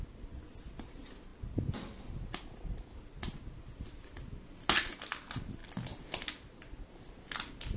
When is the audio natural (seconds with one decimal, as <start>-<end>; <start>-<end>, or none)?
0.0-7.8